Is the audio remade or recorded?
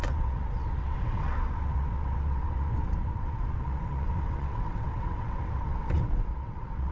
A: remade